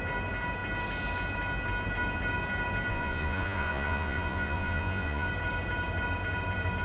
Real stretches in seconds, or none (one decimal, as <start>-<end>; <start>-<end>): 0.0-2.9; 5.3-6.8